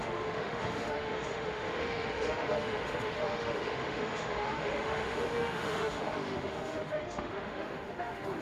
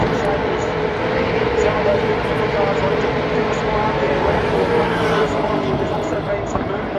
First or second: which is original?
second